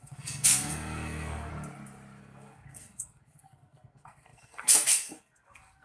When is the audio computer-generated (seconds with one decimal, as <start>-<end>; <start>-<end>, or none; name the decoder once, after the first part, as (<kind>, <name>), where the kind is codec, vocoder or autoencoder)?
0.0-1.5 (codec, SNAC); 2.2-5.8